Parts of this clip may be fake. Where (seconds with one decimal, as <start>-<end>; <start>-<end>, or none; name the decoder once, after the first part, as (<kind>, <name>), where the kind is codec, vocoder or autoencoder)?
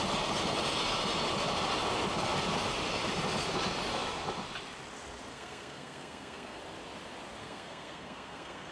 5.3-6.6 (codec, SNAC); 7.4-8.7